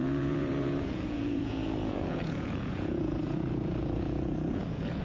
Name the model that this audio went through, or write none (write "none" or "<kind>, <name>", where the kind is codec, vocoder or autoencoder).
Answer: vocoder, Vocos